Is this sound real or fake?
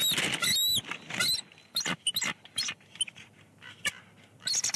real